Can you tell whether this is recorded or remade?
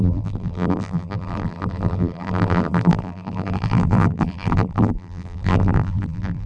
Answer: remade